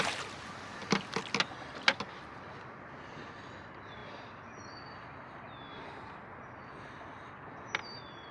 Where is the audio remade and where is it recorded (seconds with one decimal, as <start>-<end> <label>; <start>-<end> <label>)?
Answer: 0.0-8.3 recorded